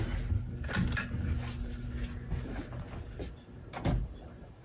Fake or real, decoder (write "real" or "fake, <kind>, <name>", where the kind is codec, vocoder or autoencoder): real